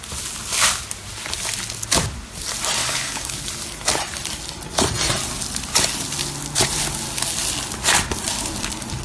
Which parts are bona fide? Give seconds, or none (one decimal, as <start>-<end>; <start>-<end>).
0.0-2.8; 3.4-9.0